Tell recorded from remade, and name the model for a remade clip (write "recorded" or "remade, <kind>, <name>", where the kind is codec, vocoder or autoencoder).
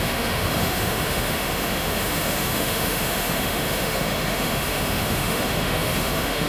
remade, autoencoder, DAC-VAE